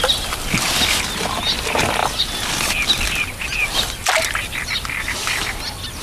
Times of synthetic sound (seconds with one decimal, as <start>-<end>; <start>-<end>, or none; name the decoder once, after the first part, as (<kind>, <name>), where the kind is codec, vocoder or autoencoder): none